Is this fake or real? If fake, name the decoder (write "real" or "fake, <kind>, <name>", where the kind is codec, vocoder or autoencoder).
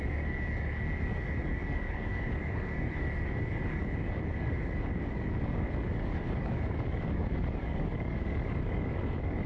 fake, codec, DAC